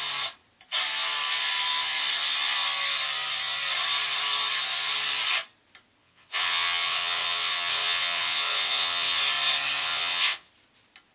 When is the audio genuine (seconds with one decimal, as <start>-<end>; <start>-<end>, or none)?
0.0-6.0; 9.2-9.8; 10.5-11.1